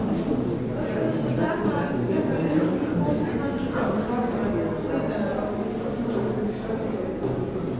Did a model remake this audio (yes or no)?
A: no